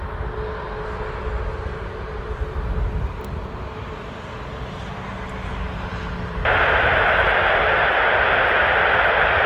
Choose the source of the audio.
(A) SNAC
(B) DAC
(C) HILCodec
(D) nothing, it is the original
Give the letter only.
D